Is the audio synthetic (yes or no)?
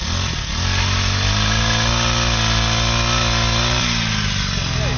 no